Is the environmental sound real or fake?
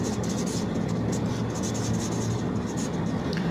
real